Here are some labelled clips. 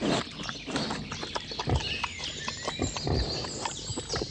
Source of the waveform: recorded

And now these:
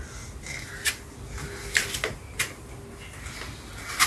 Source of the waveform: recorded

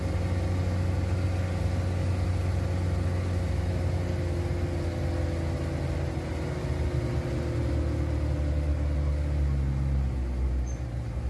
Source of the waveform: recorded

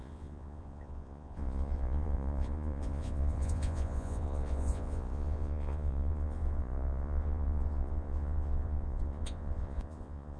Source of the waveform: remade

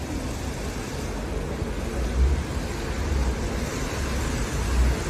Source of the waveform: recorded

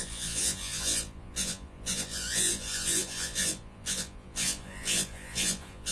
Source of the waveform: remade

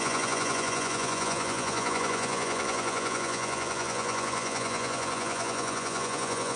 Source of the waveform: remade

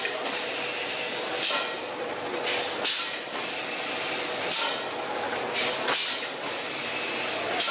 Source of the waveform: recorded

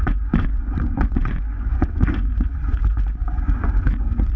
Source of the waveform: remade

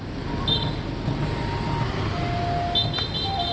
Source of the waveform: recorded